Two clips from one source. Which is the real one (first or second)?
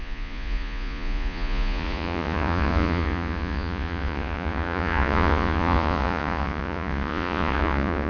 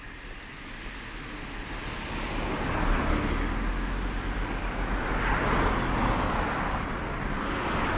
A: second